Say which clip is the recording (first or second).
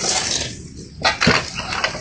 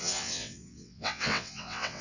first